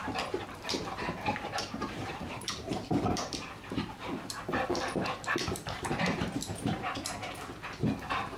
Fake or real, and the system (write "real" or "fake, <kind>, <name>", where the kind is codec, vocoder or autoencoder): fake, vocoder, BigVGAN v2